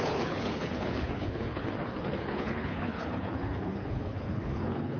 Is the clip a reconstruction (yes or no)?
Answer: yes